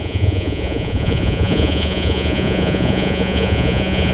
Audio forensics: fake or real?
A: fake